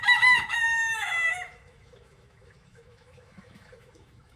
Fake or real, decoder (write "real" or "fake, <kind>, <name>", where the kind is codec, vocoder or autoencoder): fake, autoencoder, DAC-VAE